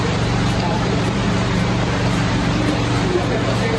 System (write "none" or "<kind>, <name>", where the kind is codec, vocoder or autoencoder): vocoder, BigVGAN v2